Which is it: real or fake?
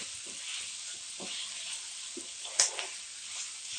real